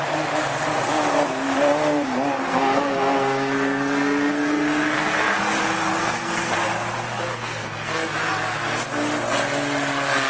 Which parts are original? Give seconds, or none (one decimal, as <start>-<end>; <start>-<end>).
0.0-2.4; 5.4-6.0; 6.7-7.3; 8.1-10.3